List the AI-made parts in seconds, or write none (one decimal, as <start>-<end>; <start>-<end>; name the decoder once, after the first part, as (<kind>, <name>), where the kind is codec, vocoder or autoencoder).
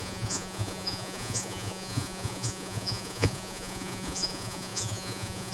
0.0-5.5 (vocoder, Vocos)